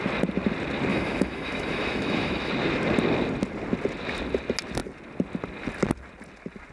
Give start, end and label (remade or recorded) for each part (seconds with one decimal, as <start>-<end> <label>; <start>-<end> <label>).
0.0-0.9 recorded; 0.9-2.5 remade; 2.5-6.7 recorded